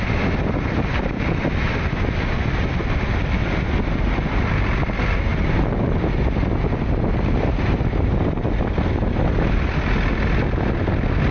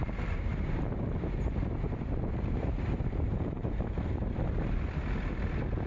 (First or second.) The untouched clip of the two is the first